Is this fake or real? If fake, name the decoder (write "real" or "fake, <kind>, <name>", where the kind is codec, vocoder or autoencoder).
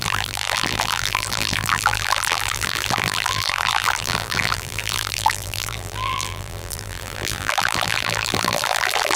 fake, vocoder, BigVGAN v2